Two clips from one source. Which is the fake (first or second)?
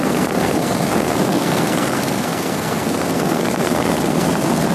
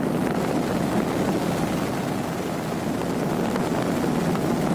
first